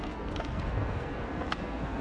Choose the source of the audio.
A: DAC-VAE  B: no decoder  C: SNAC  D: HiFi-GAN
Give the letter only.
C